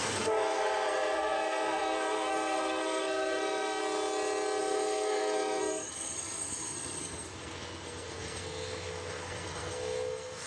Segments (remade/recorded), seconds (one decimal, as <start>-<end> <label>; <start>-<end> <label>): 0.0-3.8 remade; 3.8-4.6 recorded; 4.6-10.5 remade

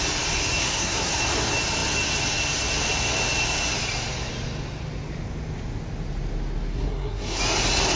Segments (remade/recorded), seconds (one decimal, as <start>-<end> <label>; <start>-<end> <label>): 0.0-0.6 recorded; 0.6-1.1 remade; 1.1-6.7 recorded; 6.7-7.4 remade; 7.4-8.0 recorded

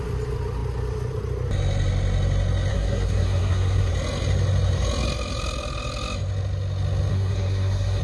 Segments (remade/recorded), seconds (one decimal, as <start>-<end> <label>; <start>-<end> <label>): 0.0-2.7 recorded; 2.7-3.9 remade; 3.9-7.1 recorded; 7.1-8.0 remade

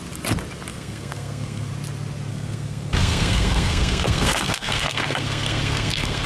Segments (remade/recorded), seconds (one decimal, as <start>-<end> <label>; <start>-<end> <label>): 0.0-0.7 recorded; 0.7-1.7 remade; 1.7-2.3 recorded; 2.3-6.3 remade

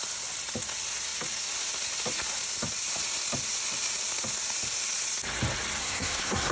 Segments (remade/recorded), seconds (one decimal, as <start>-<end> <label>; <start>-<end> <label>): 0.0-5.8 recorded; 5.8-6.5 remade

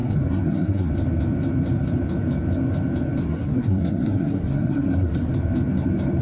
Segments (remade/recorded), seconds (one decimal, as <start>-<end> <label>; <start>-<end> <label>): 0.0-0.9 remade; 0.9-3.2 recorded; 3.2-5.3 remade; 5.3-6.2 recorded